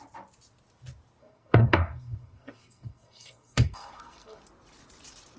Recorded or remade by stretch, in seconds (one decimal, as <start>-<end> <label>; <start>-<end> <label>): 0.0-1.2 recorded; 1.2-4.4 remade; 4.4-5.4 recorded